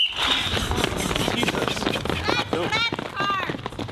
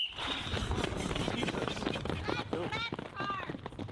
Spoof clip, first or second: second